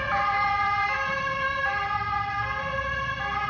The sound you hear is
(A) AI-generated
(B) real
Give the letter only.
B